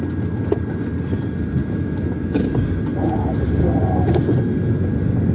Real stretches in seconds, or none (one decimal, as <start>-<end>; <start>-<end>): 0.0-1.6; 2.5-5.3